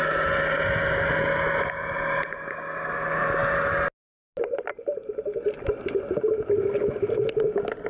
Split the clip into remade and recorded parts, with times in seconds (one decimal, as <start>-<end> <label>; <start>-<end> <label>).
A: 0.0-7.9 recorded